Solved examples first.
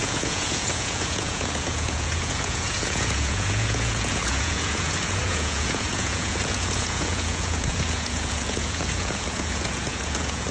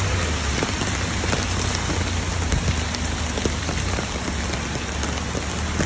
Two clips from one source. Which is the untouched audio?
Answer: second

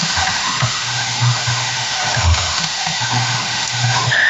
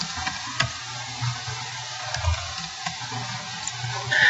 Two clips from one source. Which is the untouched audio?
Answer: second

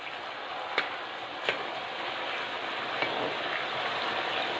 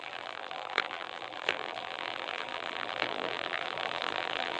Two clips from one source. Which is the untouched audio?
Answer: first